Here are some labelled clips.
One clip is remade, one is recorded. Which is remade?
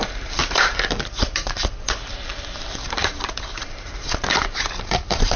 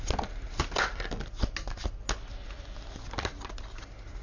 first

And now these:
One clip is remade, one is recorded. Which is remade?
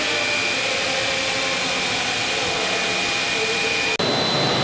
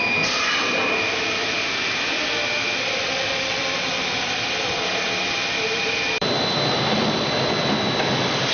second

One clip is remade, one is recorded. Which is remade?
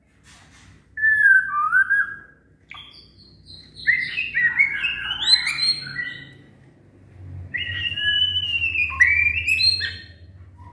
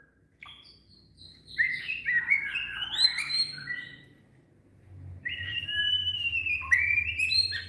second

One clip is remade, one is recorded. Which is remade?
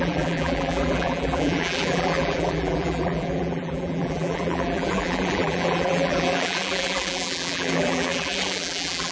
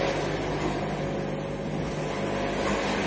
first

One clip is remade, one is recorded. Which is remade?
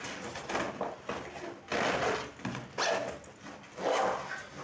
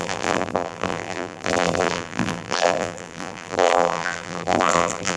second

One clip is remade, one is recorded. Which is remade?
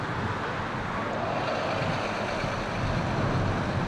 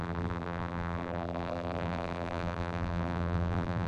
second